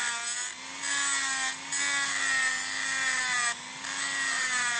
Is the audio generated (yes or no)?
no